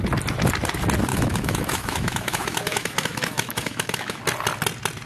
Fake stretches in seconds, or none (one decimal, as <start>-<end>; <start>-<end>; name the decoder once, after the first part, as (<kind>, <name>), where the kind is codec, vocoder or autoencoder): 1.1-4.2 (autoencoder, DAC-VAE)